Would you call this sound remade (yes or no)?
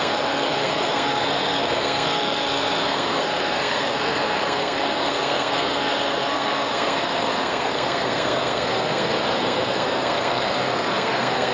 yes